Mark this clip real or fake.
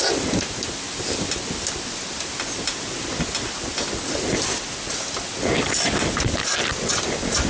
real